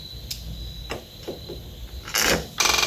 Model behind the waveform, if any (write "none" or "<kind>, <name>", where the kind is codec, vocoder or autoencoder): none